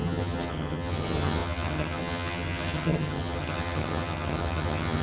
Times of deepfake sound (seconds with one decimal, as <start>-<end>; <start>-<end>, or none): 0.0-5.0